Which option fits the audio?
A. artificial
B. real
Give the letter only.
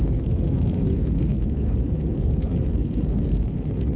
A